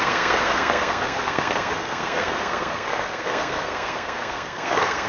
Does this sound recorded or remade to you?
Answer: remade